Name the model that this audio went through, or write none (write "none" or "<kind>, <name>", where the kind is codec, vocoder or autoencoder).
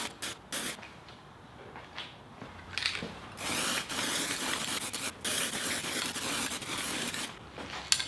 none